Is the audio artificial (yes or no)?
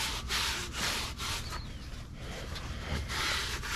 no